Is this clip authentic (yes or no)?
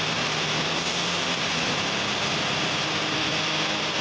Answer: yes